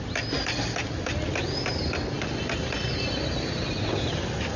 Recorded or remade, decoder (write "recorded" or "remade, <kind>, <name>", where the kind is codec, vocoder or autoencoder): recorded